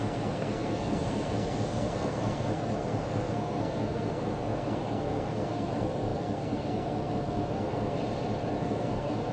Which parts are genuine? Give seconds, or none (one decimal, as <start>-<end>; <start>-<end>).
8.0-8.6